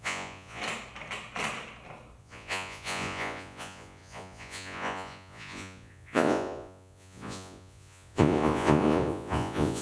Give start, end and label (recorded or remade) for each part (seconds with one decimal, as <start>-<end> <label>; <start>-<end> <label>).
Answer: 0.0-0.6 remade; 0.6-2.2 recorded; 2.2-9.8 remade